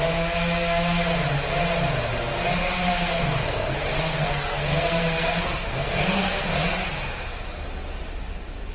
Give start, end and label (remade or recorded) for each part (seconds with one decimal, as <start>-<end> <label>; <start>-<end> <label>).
0.0-2.6 recorded; 2.6-6.5 remade; 6.5-8.7 recorded